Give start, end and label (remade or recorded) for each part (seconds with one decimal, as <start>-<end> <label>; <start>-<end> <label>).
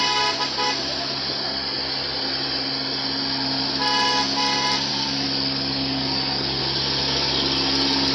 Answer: 0.0-4.9 recorded; 4.9-6.6 remade; 6.6-8.1 recorded